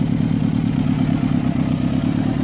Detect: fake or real real